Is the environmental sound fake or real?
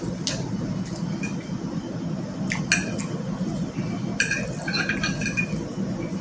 real